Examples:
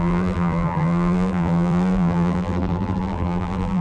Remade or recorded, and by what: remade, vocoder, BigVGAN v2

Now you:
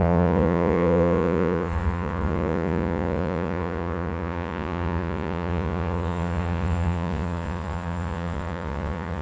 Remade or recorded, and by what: remade, vocoder, Vocos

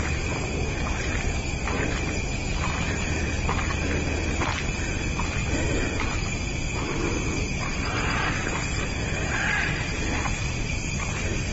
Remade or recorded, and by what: recorded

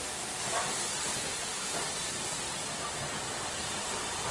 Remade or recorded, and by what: recorded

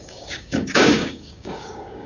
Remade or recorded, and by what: remade, codec, DAC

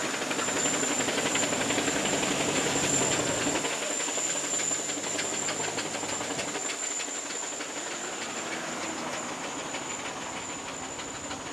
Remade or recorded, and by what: recorded